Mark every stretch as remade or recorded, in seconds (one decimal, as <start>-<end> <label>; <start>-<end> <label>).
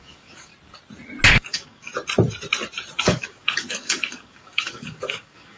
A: 0.0-0.5 remade; 0.5-1.3 recorded; 1.3-1.9 remade; 1.9-3.0 recorded; 3.0-5.6 remade